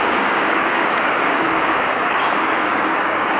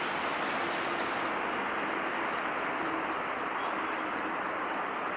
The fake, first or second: first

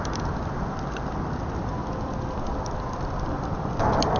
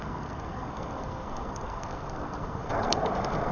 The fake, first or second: second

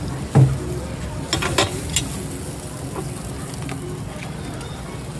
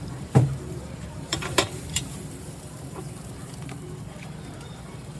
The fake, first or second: second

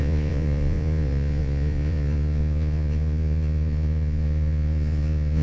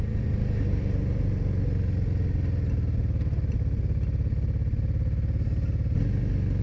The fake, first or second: first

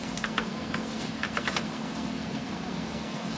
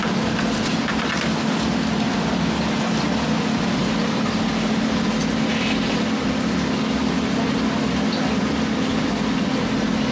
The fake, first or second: first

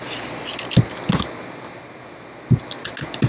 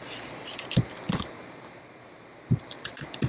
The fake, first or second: second